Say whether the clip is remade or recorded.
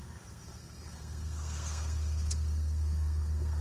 remade